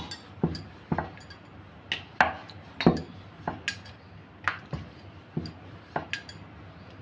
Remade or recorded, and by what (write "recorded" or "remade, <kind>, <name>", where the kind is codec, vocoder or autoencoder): recorded